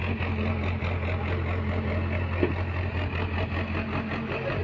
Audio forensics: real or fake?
real